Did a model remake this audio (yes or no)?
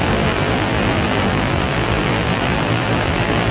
yes